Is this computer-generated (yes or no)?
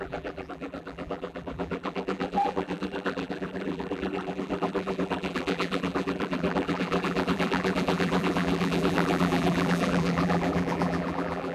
yes